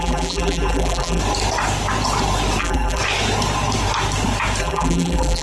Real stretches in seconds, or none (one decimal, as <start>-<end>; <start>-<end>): 1.2-2.6; 3.0-4.6